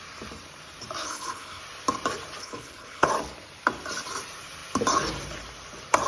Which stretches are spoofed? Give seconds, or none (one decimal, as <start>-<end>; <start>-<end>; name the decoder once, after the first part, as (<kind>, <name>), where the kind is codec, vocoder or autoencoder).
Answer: 1.0-1.6 (codec, HILCodec); 2.4-3.1